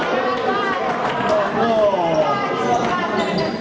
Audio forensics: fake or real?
fake